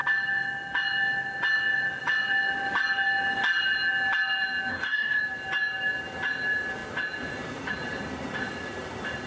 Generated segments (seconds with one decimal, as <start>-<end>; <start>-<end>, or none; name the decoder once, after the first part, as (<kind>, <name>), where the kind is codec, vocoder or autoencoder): 4.7-5.2 (codec, DAC)